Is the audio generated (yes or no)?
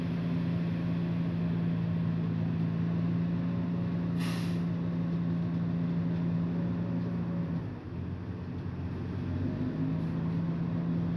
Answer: no